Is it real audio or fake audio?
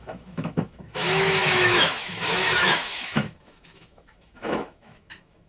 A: fake